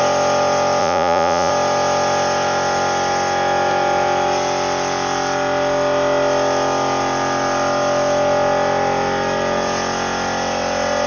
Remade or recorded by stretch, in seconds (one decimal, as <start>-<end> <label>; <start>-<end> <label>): 0.0-0.8 recorded; 0.8-1.5 remade; 1.5-11.1 recorded